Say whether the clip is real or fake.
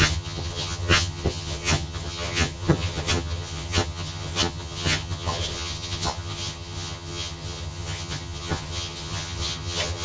fake